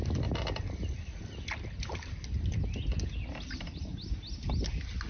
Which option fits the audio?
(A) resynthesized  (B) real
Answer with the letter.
B